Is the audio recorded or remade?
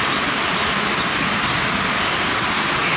recorded